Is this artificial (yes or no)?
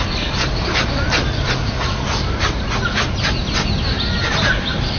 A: no